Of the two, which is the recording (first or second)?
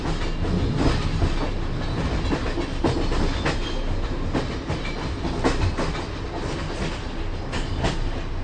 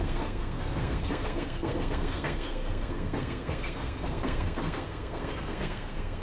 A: first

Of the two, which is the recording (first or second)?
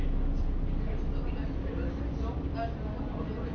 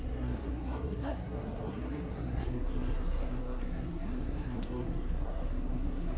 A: first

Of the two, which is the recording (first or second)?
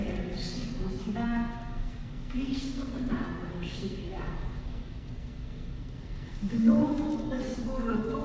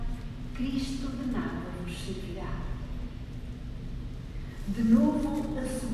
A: second